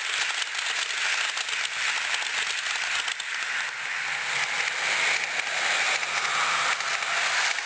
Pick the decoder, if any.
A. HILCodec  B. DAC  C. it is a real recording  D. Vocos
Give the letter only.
C